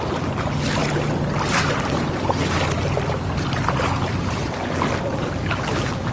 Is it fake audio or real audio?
real